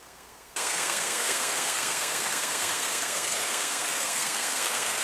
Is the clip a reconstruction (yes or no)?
yes